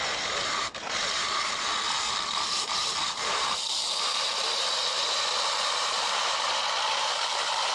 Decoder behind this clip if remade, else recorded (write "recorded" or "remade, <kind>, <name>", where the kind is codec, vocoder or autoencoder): remade, vocoder, BigVGAN v2